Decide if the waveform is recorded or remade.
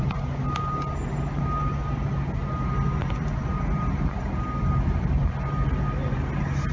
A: recorded